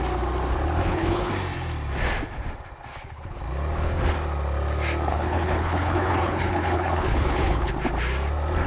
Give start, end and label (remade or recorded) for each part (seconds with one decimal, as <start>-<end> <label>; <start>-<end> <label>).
0.0-0.8 recorded; 0.8-1.3 remade; 1.3-2.9 recorded; 2.9-3.4 remade; 3.4-5.1 recorded; 5.1-7.7 remade; 7.7-8.7 recorded